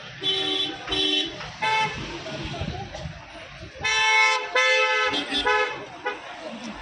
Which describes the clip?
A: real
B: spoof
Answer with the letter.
A